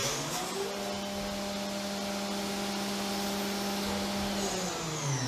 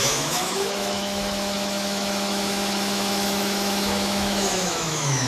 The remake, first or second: second